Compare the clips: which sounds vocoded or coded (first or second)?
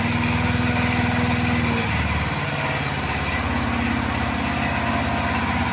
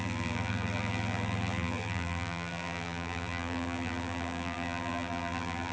second